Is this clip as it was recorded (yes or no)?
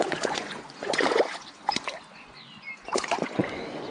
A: no